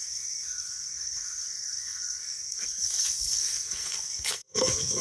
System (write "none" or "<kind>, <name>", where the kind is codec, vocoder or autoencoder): codec, SNAC